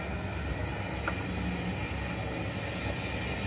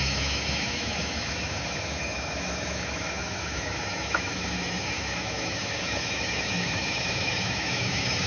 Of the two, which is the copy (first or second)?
second